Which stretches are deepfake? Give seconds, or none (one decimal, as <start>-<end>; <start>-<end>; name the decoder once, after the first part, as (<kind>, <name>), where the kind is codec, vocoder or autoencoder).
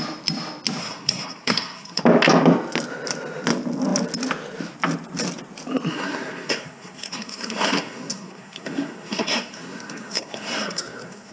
0.8-2.0 (codec, SNAC); 5.9-11.3